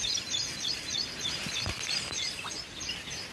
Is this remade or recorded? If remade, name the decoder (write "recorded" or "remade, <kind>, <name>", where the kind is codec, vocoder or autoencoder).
remade, vocoder, BigVGAN v2